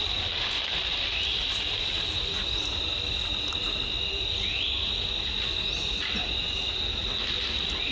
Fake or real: real